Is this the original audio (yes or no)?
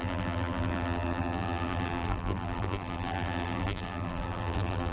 no